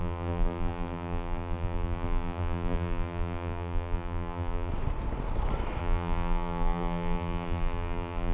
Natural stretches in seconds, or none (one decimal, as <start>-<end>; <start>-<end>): 4.7-5.8